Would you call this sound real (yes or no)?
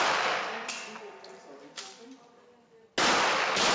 yes